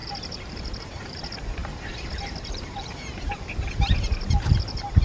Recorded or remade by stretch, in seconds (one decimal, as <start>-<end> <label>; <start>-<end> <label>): 0.0-5.0 remade